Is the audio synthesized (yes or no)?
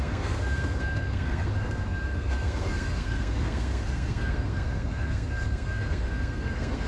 yes